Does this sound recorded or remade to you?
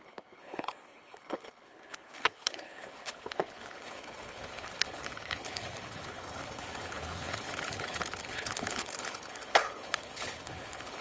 remade